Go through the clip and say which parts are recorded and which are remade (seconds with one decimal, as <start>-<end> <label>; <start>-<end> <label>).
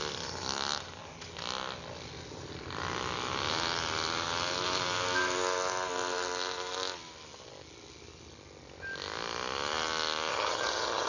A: 0.0-10.3 recorded; 10.3-11.1 remade